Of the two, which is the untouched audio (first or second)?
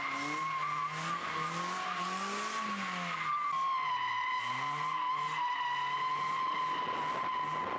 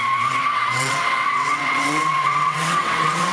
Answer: first